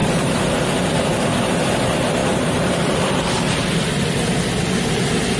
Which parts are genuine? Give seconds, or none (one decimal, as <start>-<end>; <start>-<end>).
0.7-2.2; 3.8-5.4